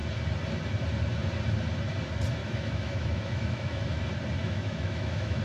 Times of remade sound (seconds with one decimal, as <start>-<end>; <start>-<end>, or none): 2.4-4.0; 4.4-5.4